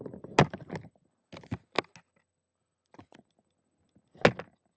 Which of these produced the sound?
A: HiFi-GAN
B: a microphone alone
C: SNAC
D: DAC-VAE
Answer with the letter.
B